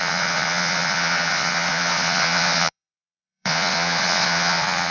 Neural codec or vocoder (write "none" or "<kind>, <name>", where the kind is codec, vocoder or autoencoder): vocoder, Vocos